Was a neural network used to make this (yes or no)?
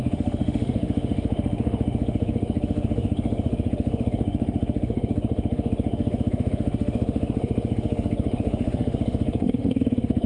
yes